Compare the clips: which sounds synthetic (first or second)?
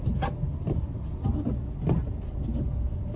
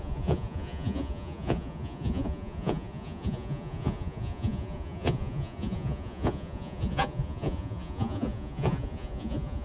second